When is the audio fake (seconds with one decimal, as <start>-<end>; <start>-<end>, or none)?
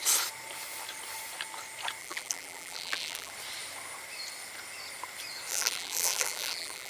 2.0-3.3; 5.5-6.9